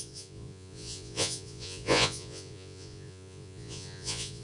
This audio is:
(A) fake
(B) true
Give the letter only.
A